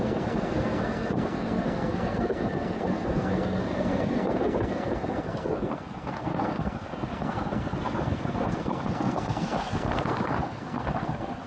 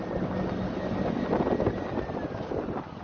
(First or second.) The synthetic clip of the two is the first